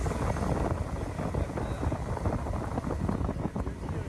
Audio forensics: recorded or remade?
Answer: recorded